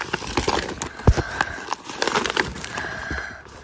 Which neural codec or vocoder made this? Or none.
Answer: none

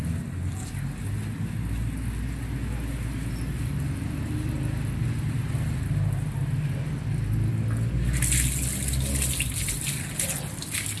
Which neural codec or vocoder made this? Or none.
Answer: none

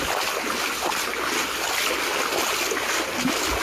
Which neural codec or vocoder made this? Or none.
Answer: none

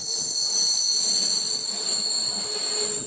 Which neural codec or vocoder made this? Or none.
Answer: none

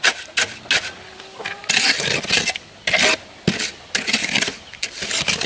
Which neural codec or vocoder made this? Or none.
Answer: none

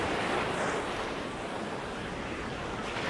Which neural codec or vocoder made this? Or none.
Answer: none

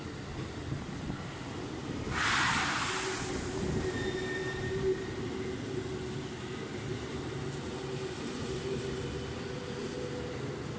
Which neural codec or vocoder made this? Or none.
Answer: none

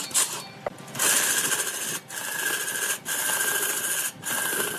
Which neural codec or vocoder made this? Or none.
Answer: none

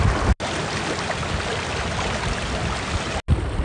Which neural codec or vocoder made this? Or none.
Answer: none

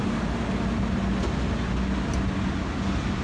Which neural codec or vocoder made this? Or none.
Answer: none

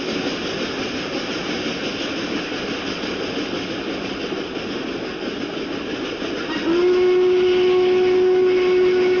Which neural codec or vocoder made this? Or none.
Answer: none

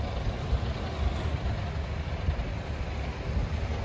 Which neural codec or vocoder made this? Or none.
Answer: none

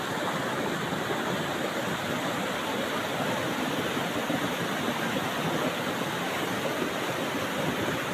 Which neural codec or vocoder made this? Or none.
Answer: none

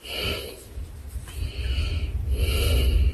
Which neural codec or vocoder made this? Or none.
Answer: none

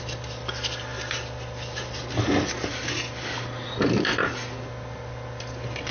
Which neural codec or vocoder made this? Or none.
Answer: none